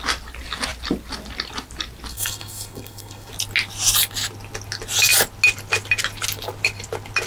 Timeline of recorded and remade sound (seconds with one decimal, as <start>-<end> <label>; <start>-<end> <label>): 0.0-2.1 recorded; 2.1-3.3 remade; 3.3-7.3 recorded